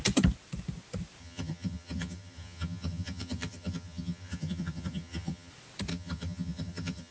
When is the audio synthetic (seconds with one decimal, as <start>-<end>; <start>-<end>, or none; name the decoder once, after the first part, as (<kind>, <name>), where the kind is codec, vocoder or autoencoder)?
1.2-5.5 (vocoder, HiFi-GAN); 5.9-7.1